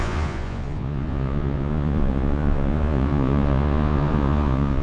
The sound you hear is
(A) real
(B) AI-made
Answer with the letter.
B